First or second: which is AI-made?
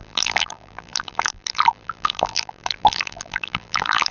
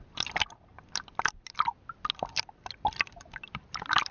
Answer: first